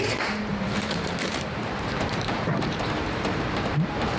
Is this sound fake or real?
fake